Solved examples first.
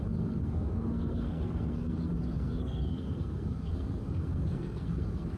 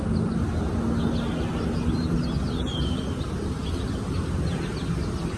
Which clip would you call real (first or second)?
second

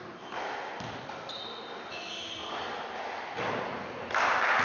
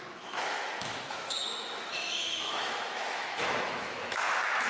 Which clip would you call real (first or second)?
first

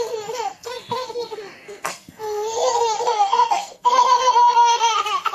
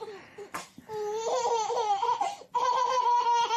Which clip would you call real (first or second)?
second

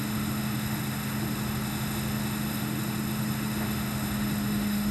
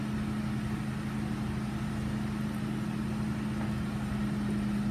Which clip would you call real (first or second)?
second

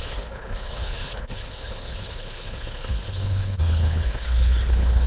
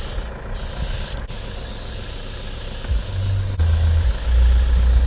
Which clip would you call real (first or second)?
second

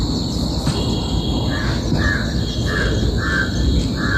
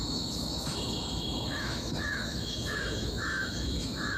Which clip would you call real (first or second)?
first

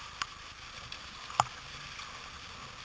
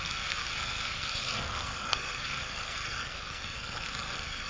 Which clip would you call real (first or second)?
first